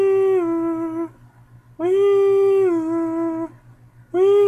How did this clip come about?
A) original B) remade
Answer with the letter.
A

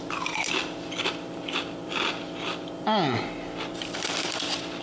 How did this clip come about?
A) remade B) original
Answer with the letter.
B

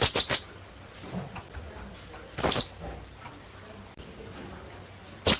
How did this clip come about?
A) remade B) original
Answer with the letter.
B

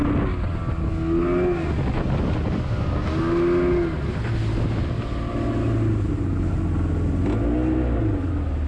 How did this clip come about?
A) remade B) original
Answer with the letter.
B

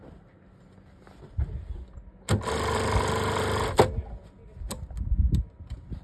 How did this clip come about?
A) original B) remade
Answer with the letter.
A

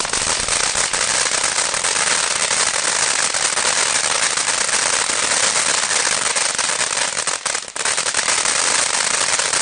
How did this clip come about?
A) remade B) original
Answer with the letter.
B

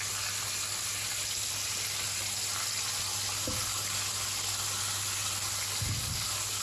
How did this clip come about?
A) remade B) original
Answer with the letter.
B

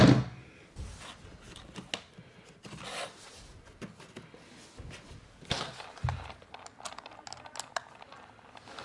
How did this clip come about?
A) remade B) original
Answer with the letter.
B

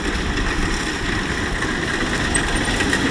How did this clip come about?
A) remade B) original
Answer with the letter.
B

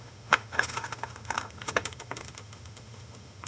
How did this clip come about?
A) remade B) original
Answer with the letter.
A